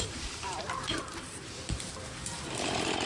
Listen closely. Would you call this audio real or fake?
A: fake